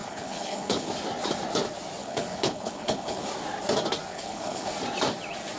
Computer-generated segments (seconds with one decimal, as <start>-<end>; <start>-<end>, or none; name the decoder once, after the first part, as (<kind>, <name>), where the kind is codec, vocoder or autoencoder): 0.0-0.9 (codec, HILCodec); 2.0-3.3; 4.1-4.7